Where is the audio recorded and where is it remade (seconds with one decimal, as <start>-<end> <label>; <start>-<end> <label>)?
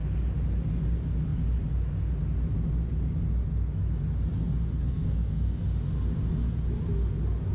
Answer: 0.0-4.9 recorded; 4.9-5.6 remade; 5.6-7.5 recorded